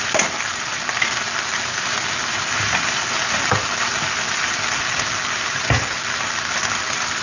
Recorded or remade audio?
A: recorded